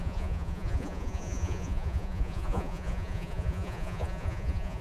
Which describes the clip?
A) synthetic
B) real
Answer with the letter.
A